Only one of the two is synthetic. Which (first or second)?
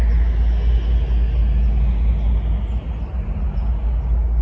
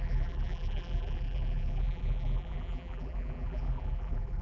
second